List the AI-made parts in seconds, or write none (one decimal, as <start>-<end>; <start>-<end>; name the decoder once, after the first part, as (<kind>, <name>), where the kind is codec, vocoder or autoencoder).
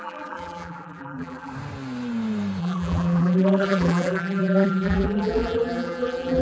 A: 0.0-1.5 (vocoder, BigVGAN v2); 2.6-6.4